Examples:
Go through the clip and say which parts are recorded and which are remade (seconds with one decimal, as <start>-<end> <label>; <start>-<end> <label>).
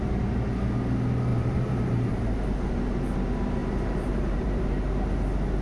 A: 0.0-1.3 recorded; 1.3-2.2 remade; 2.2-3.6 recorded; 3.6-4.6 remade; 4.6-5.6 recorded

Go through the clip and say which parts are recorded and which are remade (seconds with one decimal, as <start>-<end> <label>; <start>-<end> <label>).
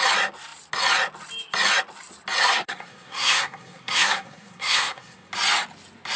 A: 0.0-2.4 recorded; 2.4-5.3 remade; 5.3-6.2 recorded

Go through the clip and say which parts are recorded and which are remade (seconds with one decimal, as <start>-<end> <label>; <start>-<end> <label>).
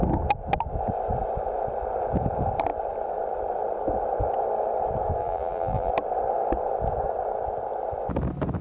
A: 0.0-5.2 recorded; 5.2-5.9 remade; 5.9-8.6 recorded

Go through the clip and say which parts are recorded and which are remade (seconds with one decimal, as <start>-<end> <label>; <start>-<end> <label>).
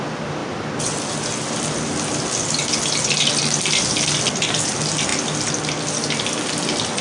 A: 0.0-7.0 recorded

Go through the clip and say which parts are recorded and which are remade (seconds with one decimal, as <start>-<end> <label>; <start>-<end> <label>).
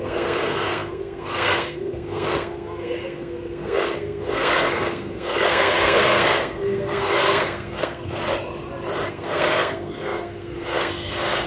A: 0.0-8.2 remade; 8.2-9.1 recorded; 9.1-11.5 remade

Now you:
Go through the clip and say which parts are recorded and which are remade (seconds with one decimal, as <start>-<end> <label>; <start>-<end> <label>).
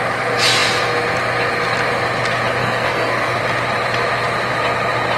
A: 0.0-2.6 recorded; 2.6-3.4 remade; 3.4-5.2 recorded